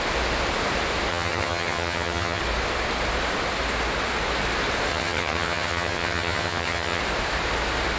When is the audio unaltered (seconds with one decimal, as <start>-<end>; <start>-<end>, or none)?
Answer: 0.0-1.1; 2.4-4.9; 7.0-8.0